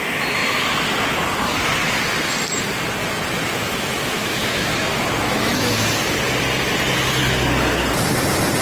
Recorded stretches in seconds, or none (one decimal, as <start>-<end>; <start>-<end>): 0.0-3.0; 5.9-8.6